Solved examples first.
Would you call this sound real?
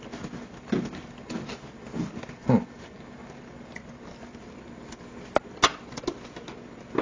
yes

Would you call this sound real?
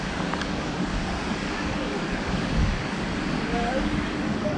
no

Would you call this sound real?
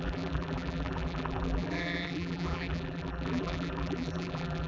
no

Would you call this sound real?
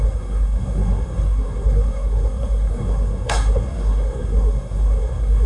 no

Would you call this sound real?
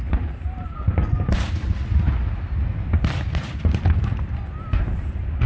yes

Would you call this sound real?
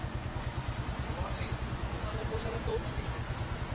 no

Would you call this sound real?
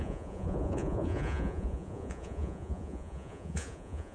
no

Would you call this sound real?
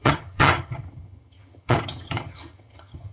no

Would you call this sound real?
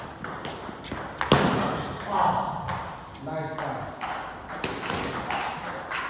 yes